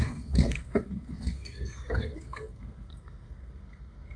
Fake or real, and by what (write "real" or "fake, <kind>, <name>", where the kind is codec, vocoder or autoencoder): fake, codec, SNAC